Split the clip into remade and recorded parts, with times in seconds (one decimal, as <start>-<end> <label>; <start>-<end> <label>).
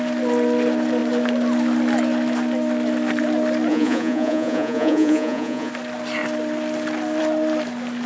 0.0-3.7 recorded; 3.7-5.7 remade; 5.7-8.1 recorded